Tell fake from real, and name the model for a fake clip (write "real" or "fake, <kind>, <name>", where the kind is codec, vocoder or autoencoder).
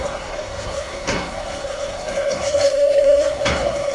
fake, codec, SNAC